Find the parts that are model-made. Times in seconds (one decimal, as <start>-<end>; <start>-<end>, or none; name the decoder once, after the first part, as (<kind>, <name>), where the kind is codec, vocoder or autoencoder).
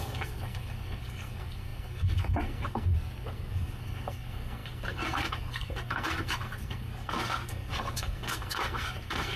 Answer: 0.0-9.4 (codec, SNAC)